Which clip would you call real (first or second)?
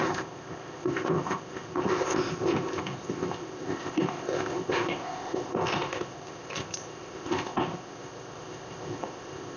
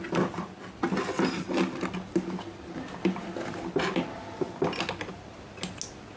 second